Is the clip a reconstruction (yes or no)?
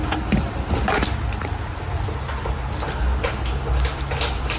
no